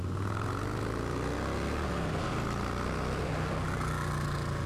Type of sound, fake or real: real